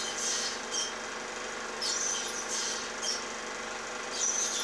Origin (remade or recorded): recorded